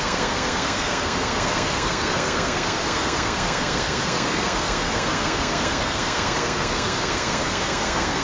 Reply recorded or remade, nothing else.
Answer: remade